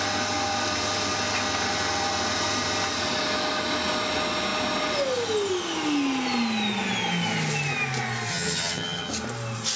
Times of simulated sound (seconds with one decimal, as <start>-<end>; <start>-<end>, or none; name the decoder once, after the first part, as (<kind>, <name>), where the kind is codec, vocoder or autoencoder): 8.3-9.1 (vocoder, HiFi-GAN)